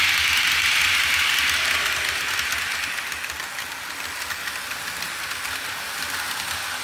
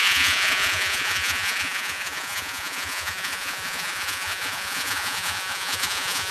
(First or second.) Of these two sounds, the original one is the first